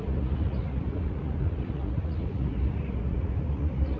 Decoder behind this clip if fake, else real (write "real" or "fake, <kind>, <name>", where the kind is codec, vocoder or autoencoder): fake, vocoder, Vocos